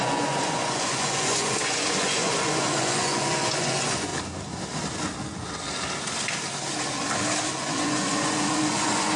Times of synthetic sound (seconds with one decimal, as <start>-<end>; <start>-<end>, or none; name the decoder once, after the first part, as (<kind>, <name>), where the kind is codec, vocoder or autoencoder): 0.0-4.1 (vocoder, Vocos); 7.6-9.2